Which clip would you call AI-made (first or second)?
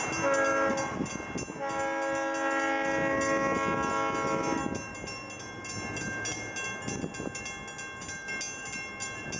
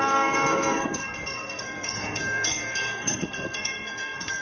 second